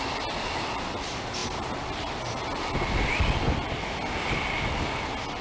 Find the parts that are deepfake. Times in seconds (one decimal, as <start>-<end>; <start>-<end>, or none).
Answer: none